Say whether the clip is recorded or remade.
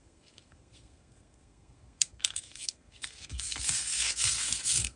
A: remade